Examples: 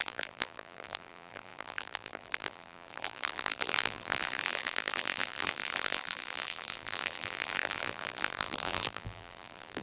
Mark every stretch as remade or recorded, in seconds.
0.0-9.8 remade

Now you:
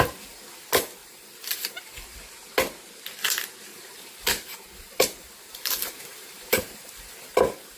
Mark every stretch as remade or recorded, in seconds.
0.0-1.0 recorded; 1.0-2.3 remade; 2.3-3.7 recorded; 3.7-7.1 remade; 7.1-7.8 recorded

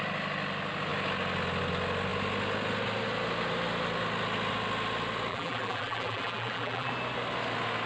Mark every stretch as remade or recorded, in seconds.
0.0-5.3 recorded; 5.3-6.9 remade; 6.9-7.9 recorded

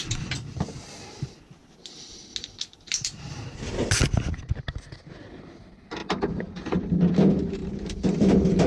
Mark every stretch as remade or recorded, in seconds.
0.0-6.0 recorded; 6.0-7.1 remade; 7.1-7.6 recorded; 7.6-8.7 remade